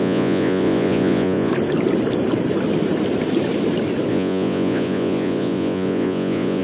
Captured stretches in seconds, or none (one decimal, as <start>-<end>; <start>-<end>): 1.5-4.1